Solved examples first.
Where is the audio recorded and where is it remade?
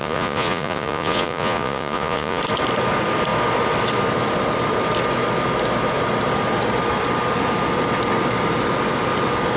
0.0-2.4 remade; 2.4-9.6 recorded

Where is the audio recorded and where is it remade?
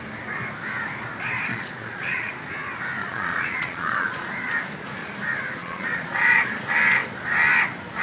0.0-1.5 recorded; 1.5-2.3 remade; 2.3-3.0 recorded; 3.0-4.3 remade; 4.3-5.6 recorded; 5.6-6.5 remade; 6.5-8.0 recorded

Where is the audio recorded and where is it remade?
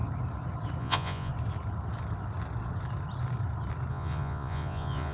0.0-0.8 recorded; 0.8-1.3 remade; 1.3-3.9 recorded; 3.9-5.1 remade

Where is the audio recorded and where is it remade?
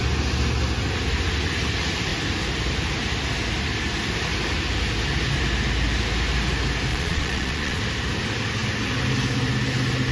0.0-6.9 recorded; 6.9-7.8 remade; 7.8-10.1 recorded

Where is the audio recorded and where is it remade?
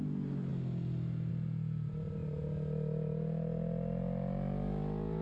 0.0-5.2 recorded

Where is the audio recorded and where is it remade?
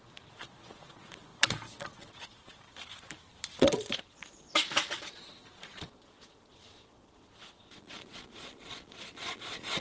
0.0-2.7 remade; 2.7-3.6 recorded; 3.6-9.8 remade